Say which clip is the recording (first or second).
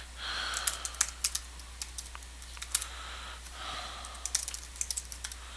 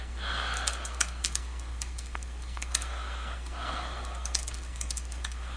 first